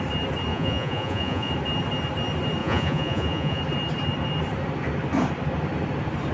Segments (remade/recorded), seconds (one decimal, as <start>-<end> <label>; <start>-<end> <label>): 0.0-0.5 recorded; 0.5-1.5 remade; 1.5-2.6 recorded; 2.6-3.6 remade; 3.6-6.3 recorded